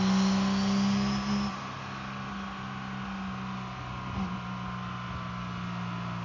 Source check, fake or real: real